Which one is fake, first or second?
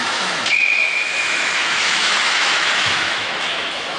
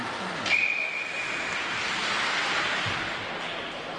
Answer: first